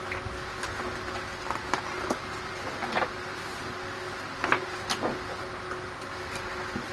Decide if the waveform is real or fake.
real